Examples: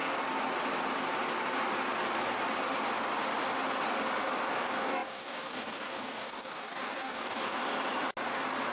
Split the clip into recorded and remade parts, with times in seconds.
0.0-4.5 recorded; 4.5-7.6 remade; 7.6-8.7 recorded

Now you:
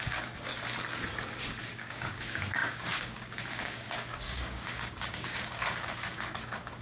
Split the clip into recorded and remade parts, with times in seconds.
0.0-0.5 remade; 0.5-1.6 recorded; 1.6-6.8 remade

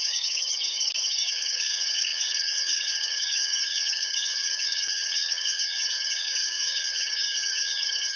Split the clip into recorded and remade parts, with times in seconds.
0.0-8.2 remade

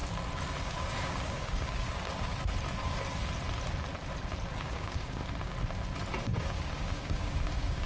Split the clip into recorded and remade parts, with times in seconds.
0.0-0.6 recorded; 0.6-2.3 remade; 2.3-4.6 recorded; 4.6-5.2 remade; 5.2-6.2 recorded; 6.2-7.9 remade

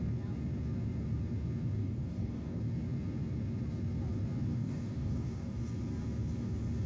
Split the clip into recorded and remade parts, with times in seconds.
0.0-1.8 recorded; 1.8-2.6 remade; 2.6-4.5 recorded; 4.5-5.6 remade; 5.6-6.9 recorded

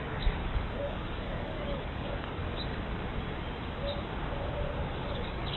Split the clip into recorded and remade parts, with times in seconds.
0.0-2.4 remade; 2.4-4.8 recorded; 4.8-5.6 remade